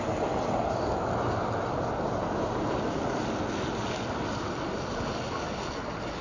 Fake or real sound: real